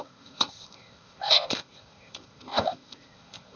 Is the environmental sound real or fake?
fake